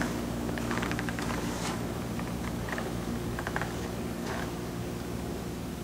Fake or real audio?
fake